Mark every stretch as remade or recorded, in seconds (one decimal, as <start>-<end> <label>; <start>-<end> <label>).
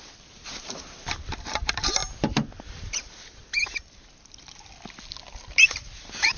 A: 0.0-3.4 remade; 3.4-5.4 recorded; 5.4-6.4 remade